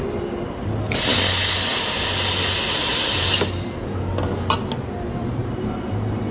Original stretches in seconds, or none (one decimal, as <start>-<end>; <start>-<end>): 0.0-5.2